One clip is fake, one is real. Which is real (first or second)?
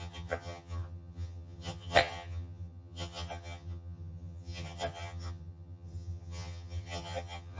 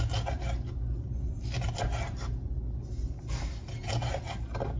second